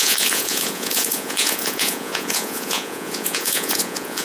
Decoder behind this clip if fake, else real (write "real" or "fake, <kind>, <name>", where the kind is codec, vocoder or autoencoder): fake, vocoder, Vocos